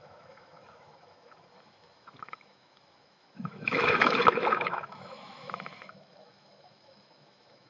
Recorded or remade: remade